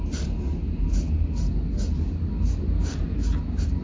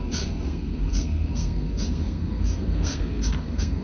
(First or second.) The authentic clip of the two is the first